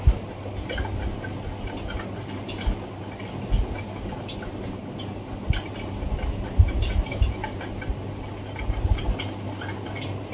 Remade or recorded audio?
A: recorded